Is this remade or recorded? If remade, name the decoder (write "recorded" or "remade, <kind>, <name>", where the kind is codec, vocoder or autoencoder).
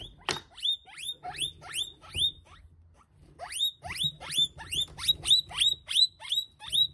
recorded